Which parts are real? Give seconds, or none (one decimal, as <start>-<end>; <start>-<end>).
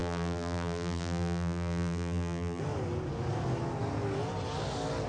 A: 2.6-5.1